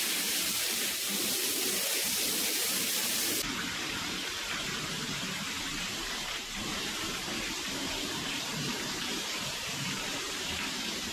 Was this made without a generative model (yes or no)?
no